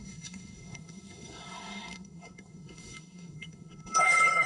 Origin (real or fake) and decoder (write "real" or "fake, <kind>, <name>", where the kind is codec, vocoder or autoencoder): fake, codec, SNAC